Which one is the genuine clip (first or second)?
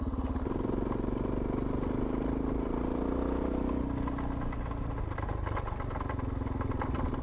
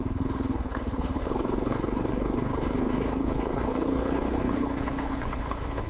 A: first